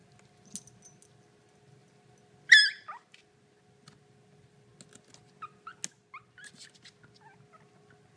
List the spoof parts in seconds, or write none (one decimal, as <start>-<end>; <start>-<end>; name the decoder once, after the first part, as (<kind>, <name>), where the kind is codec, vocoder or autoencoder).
none